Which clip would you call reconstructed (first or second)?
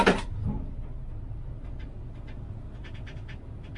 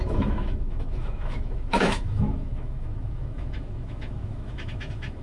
second